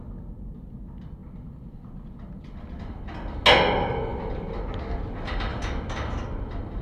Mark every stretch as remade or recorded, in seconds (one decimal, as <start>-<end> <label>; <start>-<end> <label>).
0.0-6.8 recorded